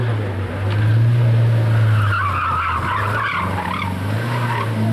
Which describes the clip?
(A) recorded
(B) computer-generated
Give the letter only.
A